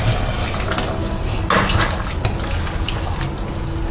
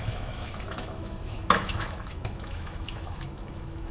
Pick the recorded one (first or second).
first